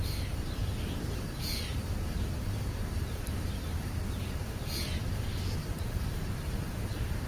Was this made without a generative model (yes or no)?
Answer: no